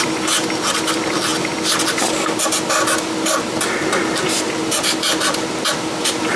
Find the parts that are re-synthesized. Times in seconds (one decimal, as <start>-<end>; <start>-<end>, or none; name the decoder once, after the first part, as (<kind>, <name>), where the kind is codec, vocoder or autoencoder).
none